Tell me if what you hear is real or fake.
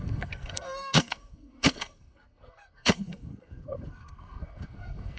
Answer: fake